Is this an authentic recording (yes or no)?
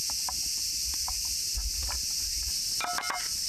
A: yes